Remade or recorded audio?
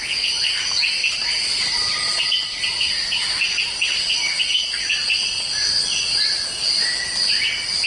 recorded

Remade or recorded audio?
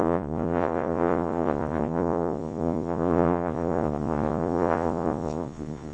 remade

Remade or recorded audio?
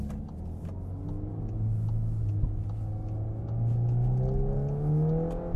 recorded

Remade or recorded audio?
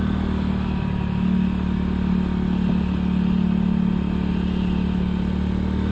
recorded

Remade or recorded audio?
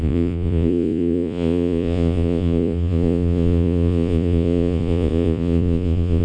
remade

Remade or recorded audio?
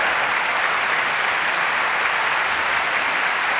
remade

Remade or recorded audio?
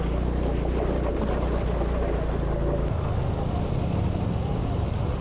recorded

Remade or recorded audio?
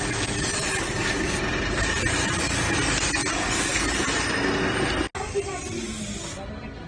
recorded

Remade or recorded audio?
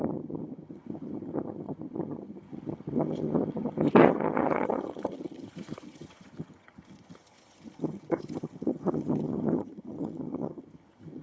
remade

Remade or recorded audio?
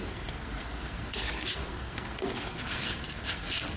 remade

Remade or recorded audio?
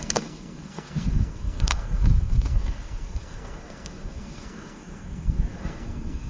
remade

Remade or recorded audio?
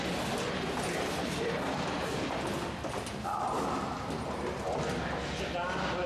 recorded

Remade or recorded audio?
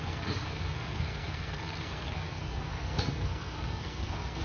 remade